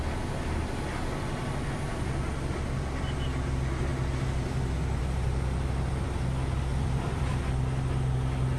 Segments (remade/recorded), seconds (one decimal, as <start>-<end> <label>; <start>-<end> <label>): 0.0-6.7 recorded; 6.7-7.4 remade; 7.4-8.6 recorded